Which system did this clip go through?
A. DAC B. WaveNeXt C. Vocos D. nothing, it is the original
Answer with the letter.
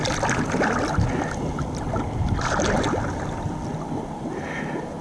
D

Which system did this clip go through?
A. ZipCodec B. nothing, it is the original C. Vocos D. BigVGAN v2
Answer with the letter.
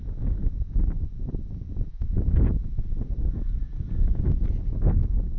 C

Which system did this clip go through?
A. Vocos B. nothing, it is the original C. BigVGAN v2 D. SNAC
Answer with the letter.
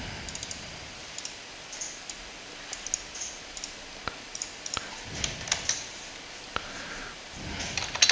B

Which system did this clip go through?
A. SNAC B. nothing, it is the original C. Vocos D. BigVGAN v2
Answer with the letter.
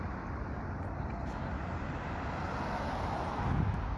B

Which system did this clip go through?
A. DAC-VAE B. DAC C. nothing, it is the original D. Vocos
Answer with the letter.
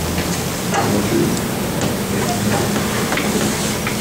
C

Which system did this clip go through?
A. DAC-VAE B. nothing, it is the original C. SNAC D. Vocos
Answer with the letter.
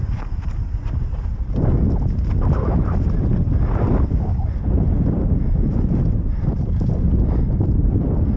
B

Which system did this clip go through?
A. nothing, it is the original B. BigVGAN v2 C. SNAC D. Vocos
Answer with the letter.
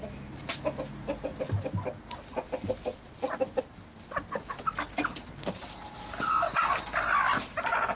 A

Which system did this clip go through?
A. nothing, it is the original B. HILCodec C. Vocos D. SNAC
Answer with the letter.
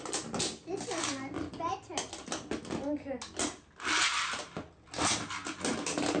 A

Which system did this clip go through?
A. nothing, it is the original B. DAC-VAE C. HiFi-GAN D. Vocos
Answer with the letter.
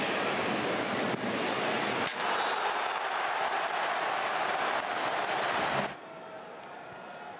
A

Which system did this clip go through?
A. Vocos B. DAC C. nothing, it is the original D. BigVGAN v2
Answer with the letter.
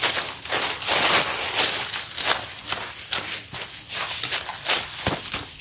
C